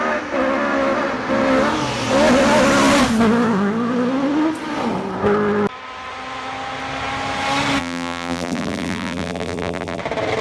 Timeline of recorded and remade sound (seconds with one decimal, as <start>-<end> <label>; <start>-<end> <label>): 0.0-7.8 recorded; 7.8-10.0 remade; 10.0-10.4 recorded